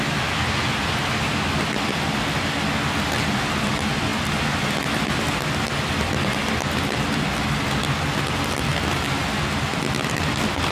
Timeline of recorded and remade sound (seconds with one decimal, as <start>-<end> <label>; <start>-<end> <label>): 0.0-10.7 recorded